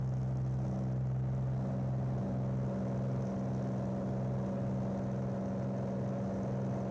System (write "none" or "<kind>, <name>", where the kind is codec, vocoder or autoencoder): none